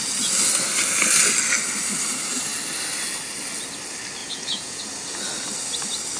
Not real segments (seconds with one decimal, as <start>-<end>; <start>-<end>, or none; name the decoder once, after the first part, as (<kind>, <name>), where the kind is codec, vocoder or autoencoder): 4.2-4.8 (vocoder, Vocos)